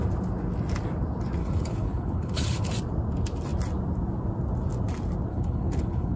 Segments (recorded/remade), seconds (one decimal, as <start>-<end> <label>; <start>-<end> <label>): 0.0-1.4 recorded; 1.4-2.7 remade; 2.7-5.3 recorded; 5.3-6.2 remade